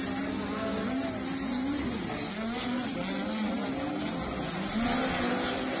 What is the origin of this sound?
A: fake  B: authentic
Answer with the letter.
B